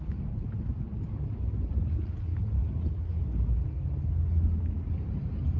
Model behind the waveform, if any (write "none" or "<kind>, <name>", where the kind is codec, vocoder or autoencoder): none